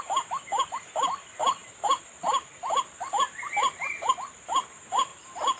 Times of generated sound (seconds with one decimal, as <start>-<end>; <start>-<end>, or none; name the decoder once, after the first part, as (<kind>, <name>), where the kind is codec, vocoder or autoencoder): none